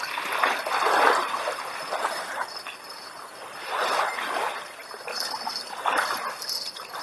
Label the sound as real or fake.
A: real